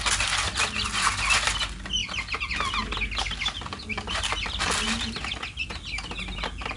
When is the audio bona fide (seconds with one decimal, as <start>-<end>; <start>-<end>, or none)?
0.0-6.8